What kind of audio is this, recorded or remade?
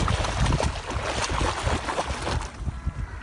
recorded